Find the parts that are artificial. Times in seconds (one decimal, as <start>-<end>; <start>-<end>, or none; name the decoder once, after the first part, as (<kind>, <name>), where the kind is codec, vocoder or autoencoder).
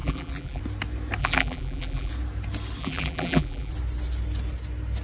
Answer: 0.0-0.6 (vocoder, BigVGAN v2); 1.2-2.1; 2.8-3.7